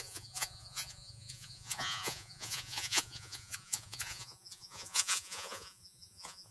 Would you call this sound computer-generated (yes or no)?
yes